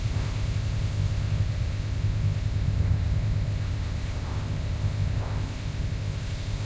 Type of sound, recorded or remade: remade